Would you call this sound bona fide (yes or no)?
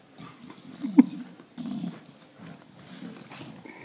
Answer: yes